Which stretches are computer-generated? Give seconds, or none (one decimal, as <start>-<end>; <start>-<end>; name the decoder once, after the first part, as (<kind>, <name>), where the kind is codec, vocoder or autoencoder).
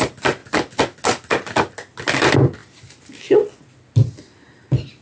none